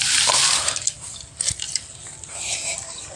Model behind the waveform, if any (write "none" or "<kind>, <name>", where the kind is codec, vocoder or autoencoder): none